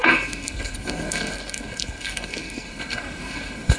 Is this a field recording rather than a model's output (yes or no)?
no